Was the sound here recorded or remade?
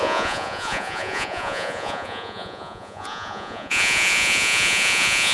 remade